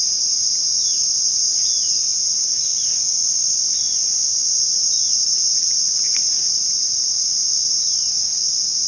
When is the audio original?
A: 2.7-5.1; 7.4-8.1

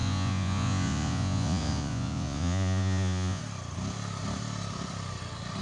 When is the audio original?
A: 3.4-5.6

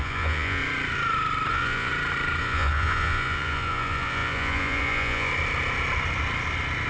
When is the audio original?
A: 0.6-1.5; 1.9-2.4; 5.3-6.9

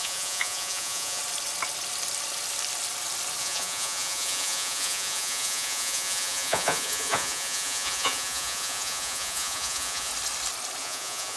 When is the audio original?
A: 1.2-3.4; 10.1-10.8

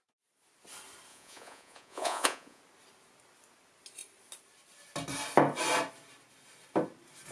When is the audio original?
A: 0.0-1.1; 2.6-7.3

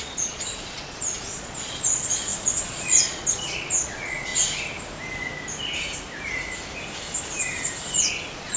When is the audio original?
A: 4.3-7.9

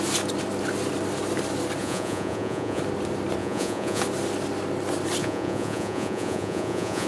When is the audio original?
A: 0.0-1.8; 2.8-3.4; 4.0-5.2

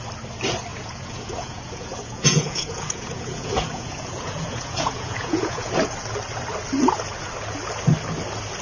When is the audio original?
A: 0.0-0.7; 5.7-8.6